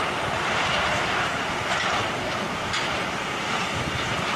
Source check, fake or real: fake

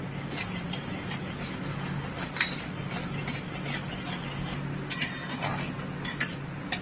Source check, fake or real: real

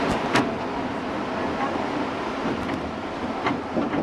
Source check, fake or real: real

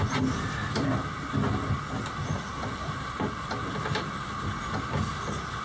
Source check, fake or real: real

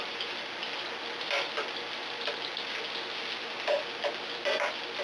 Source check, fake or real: real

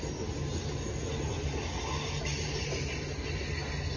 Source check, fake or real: real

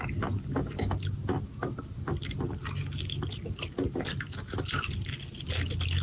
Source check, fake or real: real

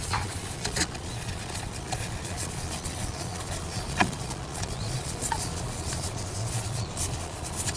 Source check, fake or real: fake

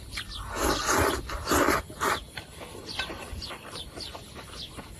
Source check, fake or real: real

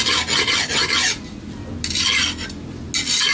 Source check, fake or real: real